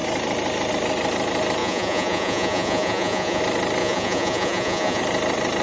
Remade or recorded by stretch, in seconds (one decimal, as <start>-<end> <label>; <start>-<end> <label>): 0.0-1.6 recorded; 1.6-3.4 remade; 3.4-3.8 recorded; 3.8-5.0 remade; 5.0-5.6 recorded